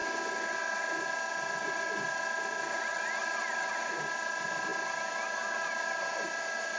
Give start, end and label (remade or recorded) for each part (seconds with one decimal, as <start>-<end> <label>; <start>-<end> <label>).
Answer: 0.0-3.2 recorded; 3.2-4.7 remade; 4.7-5.6 recorded; 5.6-6.8 remade